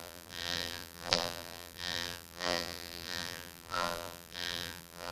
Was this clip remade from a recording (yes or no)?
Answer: yes